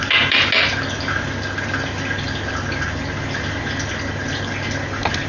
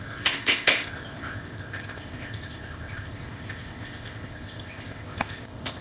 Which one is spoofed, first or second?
second